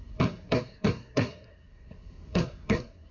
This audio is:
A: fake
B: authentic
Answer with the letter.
A